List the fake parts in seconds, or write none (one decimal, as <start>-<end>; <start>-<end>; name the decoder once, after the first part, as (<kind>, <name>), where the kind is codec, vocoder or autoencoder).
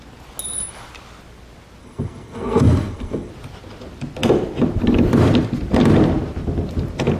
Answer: 1.8-3.3 (codec, SNAC)